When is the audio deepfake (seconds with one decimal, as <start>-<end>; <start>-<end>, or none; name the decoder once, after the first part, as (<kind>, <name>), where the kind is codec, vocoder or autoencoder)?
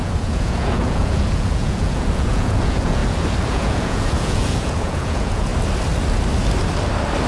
0.0-3.0 (vocoder, Vocos); 3.5-5.5